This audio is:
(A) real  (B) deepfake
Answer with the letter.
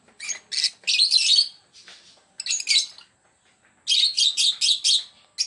A